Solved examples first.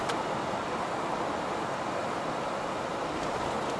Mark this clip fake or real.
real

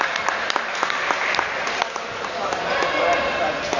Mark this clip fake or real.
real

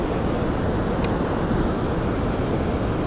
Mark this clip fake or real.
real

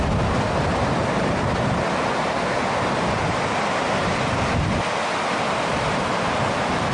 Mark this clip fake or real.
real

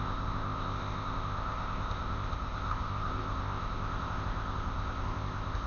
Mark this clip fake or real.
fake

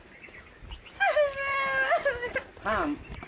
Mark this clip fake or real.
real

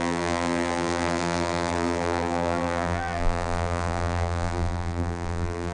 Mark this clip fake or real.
fake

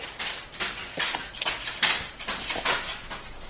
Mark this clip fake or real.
real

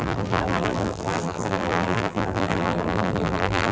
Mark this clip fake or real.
fake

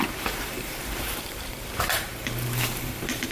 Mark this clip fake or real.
fake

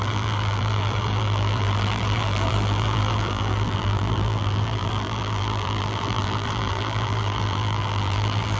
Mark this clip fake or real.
fake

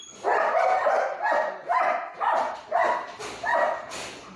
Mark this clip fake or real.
real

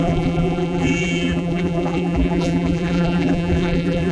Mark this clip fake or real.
fake